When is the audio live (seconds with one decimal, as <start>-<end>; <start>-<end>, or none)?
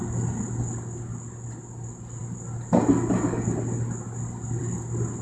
0.0-5.2